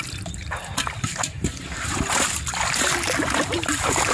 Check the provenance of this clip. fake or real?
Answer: real